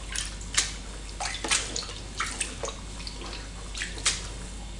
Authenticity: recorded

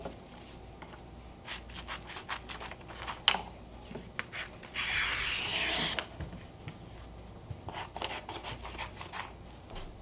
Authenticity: recorded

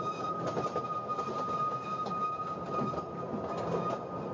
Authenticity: recorded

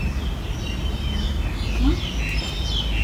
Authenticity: recorded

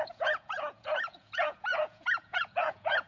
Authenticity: remade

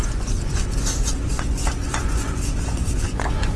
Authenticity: remade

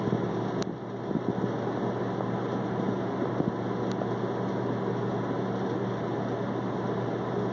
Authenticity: recorded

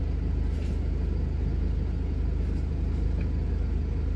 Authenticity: recorded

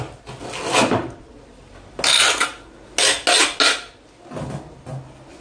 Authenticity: recorded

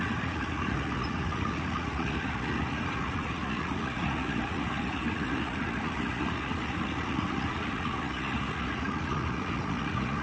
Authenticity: remade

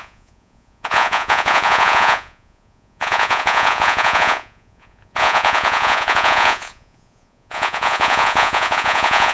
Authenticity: remade